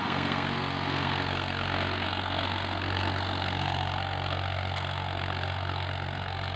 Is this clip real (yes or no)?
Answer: no